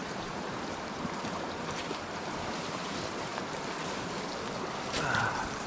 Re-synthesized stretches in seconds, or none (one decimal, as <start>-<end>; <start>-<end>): 0.0-3.3; 5.2-5.7